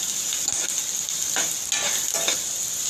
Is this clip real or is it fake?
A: real